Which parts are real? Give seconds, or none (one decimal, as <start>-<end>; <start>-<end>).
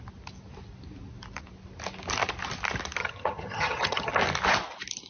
0.0-3.0; 4.1-5.1